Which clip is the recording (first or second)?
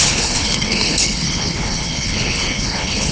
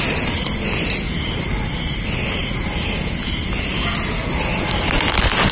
second